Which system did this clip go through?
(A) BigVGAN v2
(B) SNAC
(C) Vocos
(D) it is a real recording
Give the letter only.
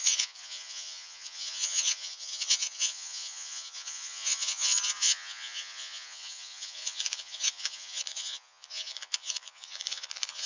C